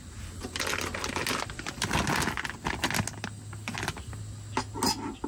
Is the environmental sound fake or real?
real